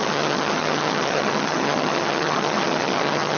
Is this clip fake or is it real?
fake